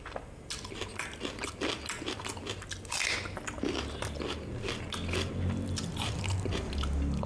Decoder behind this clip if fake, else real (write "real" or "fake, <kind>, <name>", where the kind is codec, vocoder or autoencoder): real